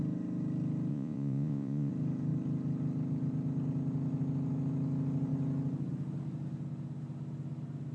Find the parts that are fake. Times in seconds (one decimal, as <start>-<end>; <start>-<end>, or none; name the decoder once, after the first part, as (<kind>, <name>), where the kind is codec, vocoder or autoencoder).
0.9-1.9 (vocoder, Vocos)